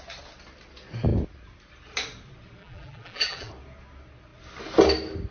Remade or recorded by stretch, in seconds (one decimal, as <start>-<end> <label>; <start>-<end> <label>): 0.0-2.6 recorded; 2.6-3.5 remade; 3.5-5.3 recorded